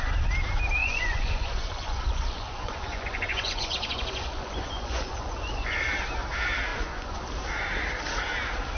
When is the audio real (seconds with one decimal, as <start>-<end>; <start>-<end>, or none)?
0.0-0.8; 5.8-6.7; 7.2-8.8